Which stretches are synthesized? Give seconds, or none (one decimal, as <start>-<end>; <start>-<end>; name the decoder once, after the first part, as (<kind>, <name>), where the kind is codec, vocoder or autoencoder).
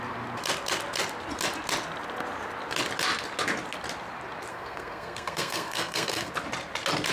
4.5-6.3 (codec, SNAC)